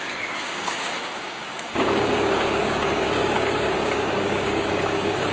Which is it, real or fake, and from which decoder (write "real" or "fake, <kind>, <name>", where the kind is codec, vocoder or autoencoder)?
fake, codec, DAC